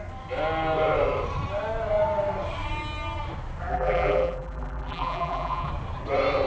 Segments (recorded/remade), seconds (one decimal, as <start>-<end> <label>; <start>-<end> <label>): 0.0-3.7 recorded; 3.7-5.7 remade; 5.7-6.5 recorded